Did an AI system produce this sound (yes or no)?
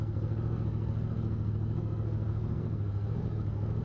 yes